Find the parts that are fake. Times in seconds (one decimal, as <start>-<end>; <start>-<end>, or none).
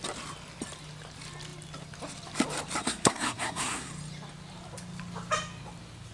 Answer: 2.8-3.9